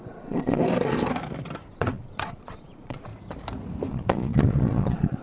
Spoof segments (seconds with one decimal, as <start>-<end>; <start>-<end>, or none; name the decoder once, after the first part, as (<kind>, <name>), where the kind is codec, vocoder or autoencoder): 0.0-0.6 (vocoder, Vocos); 1.7-3.1; 3.9-5.2